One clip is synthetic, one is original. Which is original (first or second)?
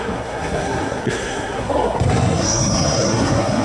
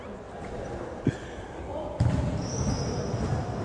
second